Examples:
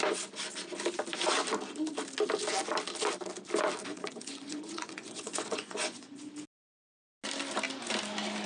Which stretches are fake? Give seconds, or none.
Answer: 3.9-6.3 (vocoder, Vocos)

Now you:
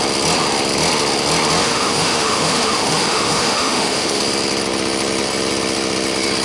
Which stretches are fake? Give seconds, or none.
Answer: 1.6-4.2 (autoencoder, DAC-VAE)

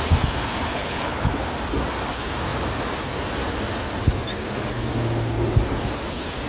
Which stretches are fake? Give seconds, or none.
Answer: 0.7-1.3 (codec, HILCodec)

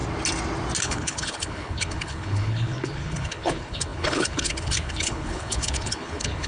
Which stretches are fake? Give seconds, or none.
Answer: 0.8-6.5 (codec, HILCodec)